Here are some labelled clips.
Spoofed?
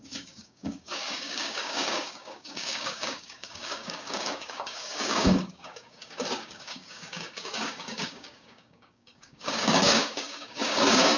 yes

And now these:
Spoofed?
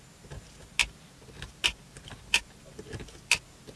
no